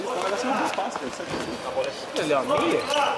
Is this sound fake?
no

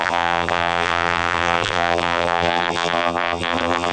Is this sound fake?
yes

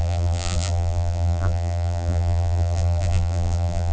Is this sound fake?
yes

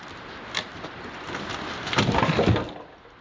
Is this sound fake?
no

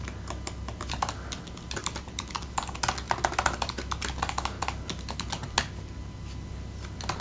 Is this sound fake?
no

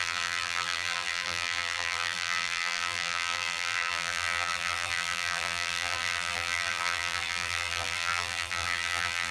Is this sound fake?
yes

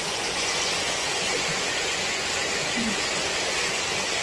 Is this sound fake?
yes